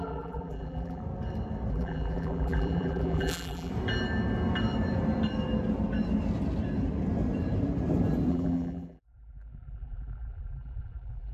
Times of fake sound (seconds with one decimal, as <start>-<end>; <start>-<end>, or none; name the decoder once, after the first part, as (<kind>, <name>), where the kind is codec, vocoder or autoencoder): 0.0-1.0 (vocoder, BigVGAN v2); 1.7-3.7; 8.3-11.3